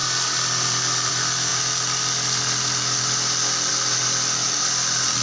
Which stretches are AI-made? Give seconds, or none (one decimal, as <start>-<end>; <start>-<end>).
none